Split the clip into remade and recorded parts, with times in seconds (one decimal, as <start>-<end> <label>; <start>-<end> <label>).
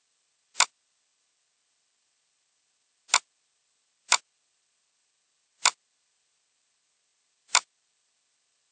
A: 0.0-8.7 recorded